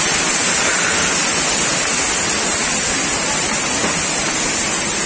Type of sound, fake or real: real